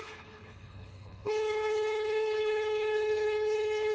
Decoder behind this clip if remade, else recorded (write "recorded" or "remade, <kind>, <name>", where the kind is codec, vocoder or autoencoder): remade, codec, HILCodec